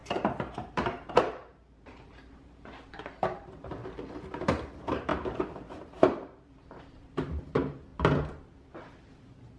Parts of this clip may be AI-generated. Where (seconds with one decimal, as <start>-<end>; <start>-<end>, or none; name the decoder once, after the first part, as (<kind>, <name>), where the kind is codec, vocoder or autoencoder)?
0.0-3.8 (vocoder, BigVGAN v2); 4.4-5.1; 5.7-7.9; 9.2-9.6